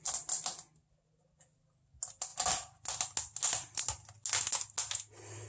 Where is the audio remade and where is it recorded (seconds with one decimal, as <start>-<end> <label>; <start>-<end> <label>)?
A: 0.0-5.5 recorded